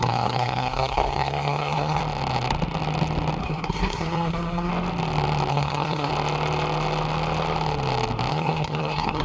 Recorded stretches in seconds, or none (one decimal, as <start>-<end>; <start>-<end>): 2.0-3.4; 4.7-5.5; 6.1-8.3